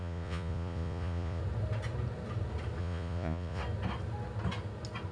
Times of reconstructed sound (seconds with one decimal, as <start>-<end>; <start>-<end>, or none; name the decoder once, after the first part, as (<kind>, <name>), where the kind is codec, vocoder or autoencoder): 0.0-1.4 (vocoder, Vocos); 2.8-3.6